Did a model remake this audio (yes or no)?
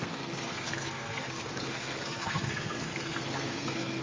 yes